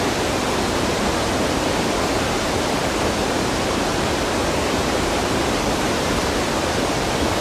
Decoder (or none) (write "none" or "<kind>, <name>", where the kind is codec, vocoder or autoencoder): vocoder, BigVGAN v2